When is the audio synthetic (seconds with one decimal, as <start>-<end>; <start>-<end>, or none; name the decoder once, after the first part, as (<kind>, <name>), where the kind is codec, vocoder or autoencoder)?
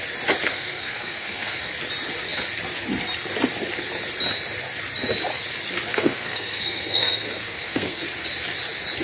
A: 0.5-1.7 (codec, SNAC); 5.9-8.0